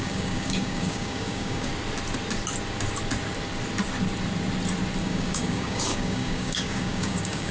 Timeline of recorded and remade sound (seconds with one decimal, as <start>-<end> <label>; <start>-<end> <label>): 0.0-1.7 remade; 1.7-5.0 recorded; 5.0-7.5 remade